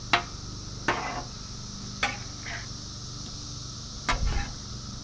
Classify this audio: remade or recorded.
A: recorded